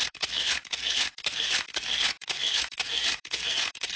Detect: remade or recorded remade